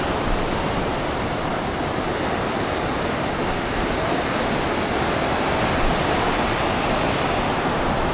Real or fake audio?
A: real